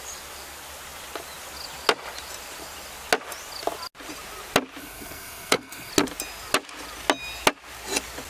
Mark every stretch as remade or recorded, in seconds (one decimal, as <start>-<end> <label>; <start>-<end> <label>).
0.0-4.8 recorded; 4.8-5.9 remade; 5.9-8.3 recorded